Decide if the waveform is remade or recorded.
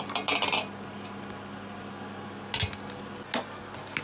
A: recorded